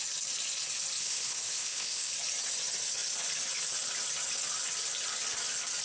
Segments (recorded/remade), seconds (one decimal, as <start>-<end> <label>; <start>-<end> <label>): 0.0-1.0 recorded; 1.0-2.1 remade; 2.1-5.8 recorded